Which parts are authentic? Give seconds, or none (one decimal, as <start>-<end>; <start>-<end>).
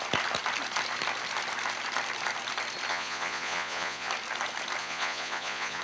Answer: 0.0-2.9; 4.1-4.8